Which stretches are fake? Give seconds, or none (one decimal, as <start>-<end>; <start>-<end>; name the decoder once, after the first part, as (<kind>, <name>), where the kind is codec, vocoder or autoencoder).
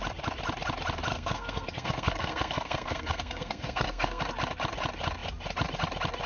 1.1-4.2 (codec, SNAC)